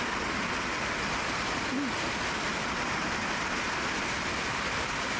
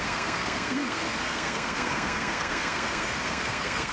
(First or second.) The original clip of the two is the first